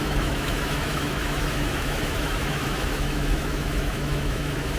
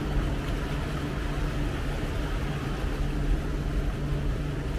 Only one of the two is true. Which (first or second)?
second